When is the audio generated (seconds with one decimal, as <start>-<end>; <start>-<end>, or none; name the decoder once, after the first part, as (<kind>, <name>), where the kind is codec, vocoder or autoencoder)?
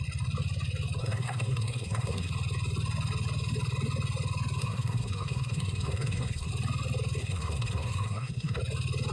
1.0-2.3 (codec, SNAC); 4.6-6.5; 7.2-8.6